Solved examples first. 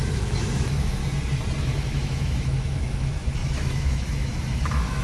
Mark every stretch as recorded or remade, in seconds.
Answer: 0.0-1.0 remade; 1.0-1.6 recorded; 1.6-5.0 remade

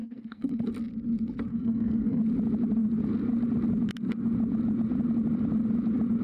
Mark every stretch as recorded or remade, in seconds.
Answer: 0.0-0.6 remade; 0.6-1.5 recorded; 1.5-2.2 remade; 2.2-6.2 recorded

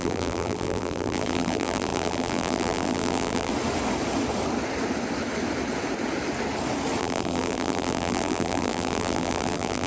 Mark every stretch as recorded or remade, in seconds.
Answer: 0.0-3.5 remade; 3.5-7.0 recorded; 7.0-9.9 remade

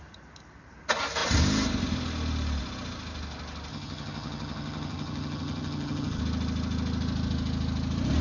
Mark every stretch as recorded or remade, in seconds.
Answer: 0.0-3.7 recorded; 3.7-6.2 remade; 6.2-8.2 recorded

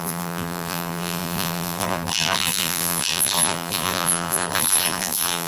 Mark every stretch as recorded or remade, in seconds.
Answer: 0.0-5.5 remade

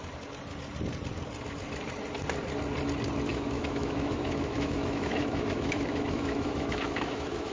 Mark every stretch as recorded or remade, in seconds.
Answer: 0.0-3.3 recorded; 3.3-7.5 remade

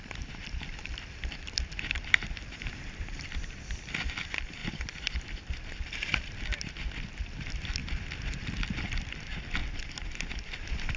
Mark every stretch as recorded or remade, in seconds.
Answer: 0.0-9.6 remade; 9.6-11.0 recorded

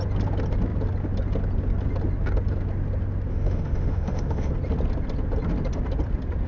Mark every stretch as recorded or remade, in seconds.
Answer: 0.0-3.3 recorded; 3.3-4.5 remade; 4.5-6.5 recorded